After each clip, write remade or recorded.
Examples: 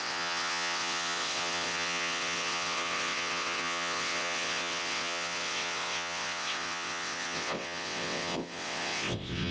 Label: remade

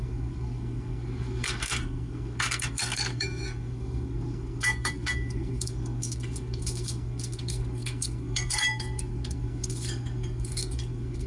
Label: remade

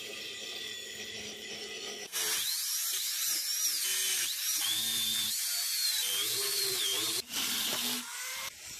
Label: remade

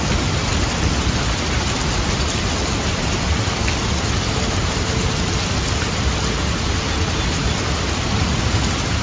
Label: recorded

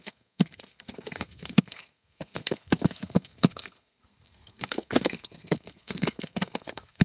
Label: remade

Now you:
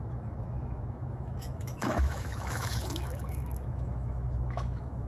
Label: remade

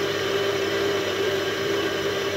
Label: remade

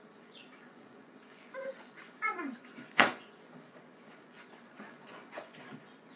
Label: remade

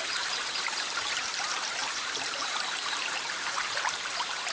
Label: remade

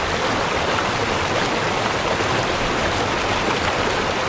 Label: recorded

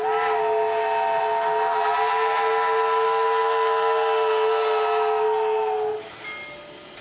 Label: recorded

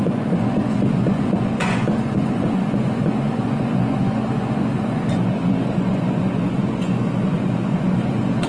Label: remade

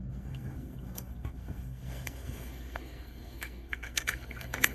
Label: remade